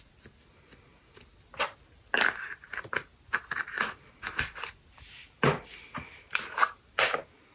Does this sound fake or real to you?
real